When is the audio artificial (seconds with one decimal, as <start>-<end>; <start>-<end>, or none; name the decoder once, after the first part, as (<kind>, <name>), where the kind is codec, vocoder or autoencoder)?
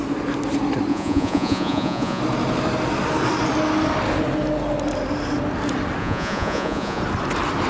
0.9-2.2 (vocoder, Vocos); 6.0-7.0